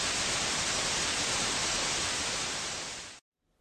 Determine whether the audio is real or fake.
real